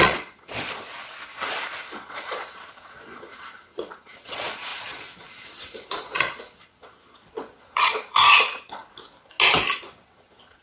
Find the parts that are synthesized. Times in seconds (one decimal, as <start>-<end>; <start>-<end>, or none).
0.0-0.9; 1.9-8.8; 9.8-10.6